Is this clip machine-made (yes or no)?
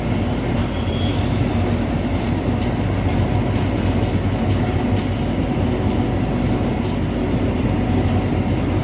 no